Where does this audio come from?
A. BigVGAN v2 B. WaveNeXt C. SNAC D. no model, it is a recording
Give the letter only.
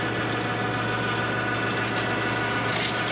D